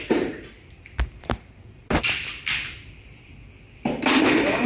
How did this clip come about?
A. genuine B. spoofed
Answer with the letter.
B